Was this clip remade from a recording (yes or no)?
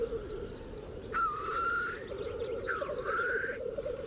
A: no